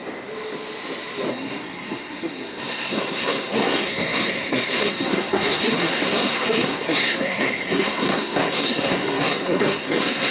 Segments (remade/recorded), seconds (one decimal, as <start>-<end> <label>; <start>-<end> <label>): 0.0-1.3 recorded; 1.3-10.3 remade